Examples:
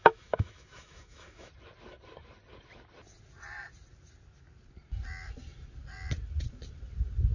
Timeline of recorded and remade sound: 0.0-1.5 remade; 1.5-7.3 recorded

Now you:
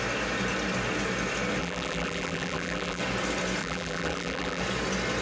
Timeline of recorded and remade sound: 0.0-1.6 recorded; 1.6-3.0 remade; 3.0-3.6 recorded; 3.6-4.6 remade; 4.6-5.2 recorded

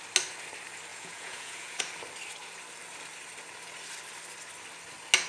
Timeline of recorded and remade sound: 0.0-0.9 recorded; 0.9-1.8 remade; 1.8-5.3 recorded

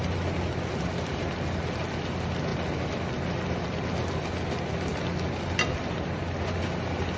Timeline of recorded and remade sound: 0.0-7.2 recorded

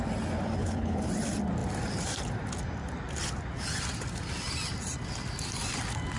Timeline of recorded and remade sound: 0.0-0.6 recorded; 0.6-1.1 remade; 1.1-6.2 recorded